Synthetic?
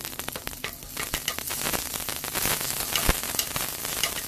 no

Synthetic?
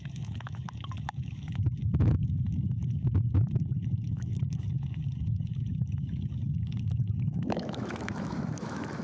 yes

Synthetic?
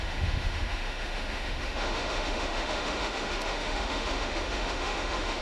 yes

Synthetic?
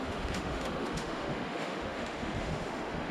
yes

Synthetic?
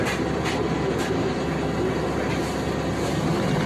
no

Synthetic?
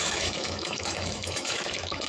yes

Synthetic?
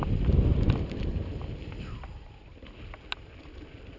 no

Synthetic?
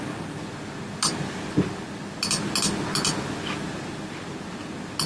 no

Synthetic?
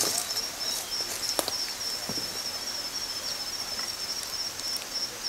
no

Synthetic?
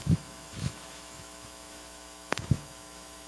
yes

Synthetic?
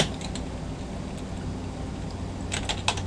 no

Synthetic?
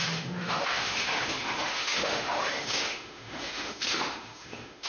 yes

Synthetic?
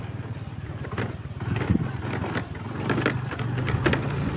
no